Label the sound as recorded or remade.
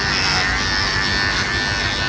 recorded